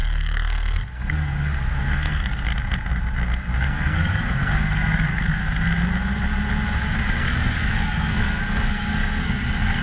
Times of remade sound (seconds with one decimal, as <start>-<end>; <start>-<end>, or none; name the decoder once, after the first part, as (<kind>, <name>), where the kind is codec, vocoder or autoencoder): 0.0-2.5 (codec, SNAC); 3.6-5.4; 7.1-9.8